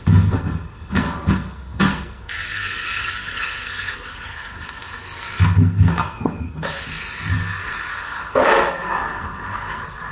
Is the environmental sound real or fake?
fake